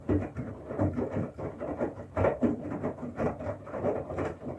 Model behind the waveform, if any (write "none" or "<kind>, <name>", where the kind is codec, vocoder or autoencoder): vocoder, BigVGAN v2